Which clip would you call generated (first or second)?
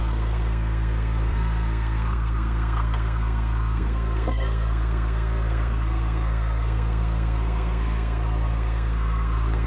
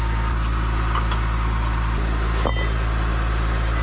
first